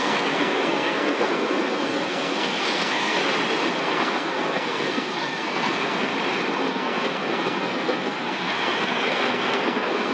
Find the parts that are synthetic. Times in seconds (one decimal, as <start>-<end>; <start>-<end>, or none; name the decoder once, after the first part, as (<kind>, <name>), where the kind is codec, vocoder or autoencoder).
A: 0.0-3.2 (codec, SNAC); 3.8-6.1; 6.7-10.1